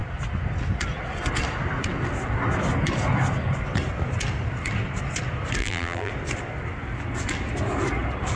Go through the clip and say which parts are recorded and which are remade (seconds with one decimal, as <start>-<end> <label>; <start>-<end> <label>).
0.0-5.6 recorded; 5.6-6.1 remade; 6.1-8.4 recorded